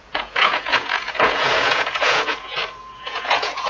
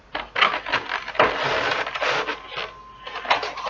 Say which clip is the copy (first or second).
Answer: first